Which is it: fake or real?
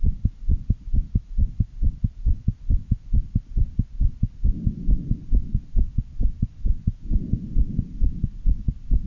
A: real